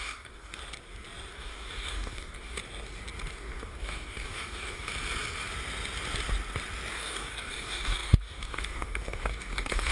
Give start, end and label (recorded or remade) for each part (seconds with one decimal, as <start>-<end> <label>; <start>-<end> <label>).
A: 0.0-0.6 remade; 0.6-1.3 recorded; 1.3-2.6 remade; 2.6-3.3 recorded; 3.3-4.9 remade; 4.9-6.9 recorded; 6.9-9.9 remade